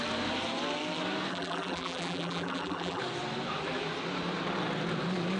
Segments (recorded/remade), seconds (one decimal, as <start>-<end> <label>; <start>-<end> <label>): 0.0-1.3 recorded; 1.3-3.0 remade; 3.0-5.4 recorded